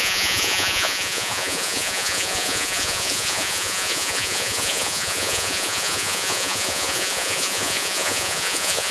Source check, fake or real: fake